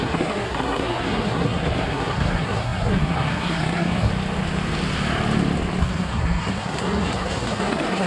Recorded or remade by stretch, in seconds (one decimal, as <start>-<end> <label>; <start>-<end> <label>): 0.0-4.1 remade; 4.1-5.8 recorded; 5.8-8.1 remade